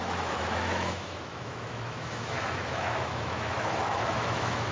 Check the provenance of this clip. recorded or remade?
remade